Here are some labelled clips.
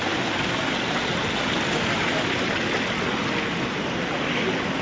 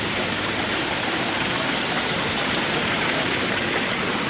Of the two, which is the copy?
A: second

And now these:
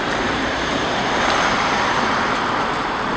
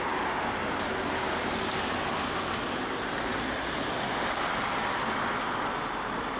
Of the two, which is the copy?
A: first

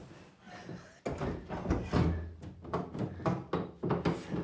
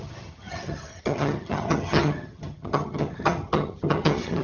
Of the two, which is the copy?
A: second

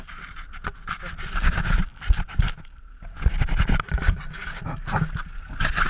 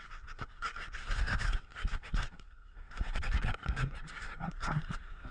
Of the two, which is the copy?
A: second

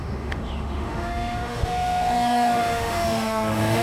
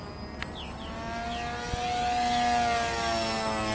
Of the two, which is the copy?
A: first